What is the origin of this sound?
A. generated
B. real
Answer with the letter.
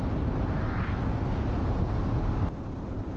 B